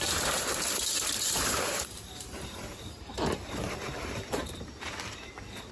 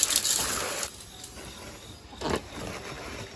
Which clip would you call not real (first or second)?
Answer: first